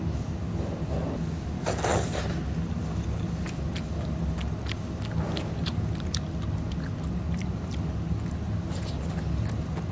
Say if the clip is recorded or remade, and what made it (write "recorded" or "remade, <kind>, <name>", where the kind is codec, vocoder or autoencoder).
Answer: recorded